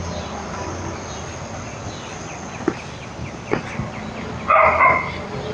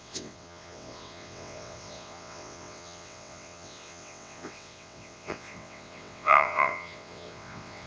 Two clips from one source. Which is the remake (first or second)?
second